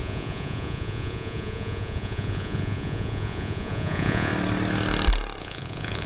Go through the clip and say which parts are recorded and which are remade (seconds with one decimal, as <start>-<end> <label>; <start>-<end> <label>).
0.0-4.3 remade; 4.3-5.4 recorded; 5.4-6.1 remade